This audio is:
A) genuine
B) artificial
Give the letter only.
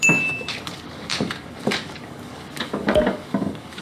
B